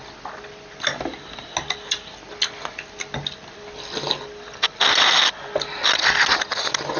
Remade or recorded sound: recorded